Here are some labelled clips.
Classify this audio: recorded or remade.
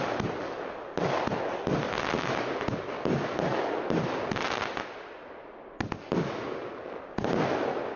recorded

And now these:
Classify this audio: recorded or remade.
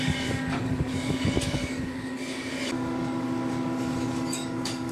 remade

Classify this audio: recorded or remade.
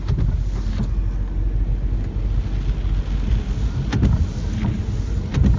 recorded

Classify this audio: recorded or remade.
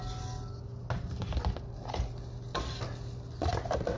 recorded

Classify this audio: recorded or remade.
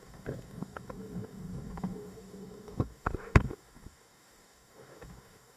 remade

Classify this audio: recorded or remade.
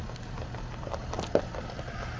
recorded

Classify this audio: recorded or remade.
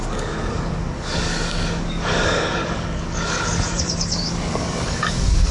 remade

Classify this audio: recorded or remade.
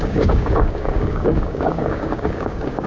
remade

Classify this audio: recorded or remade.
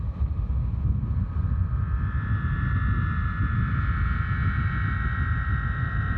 recorded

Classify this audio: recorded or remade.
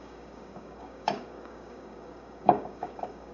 remade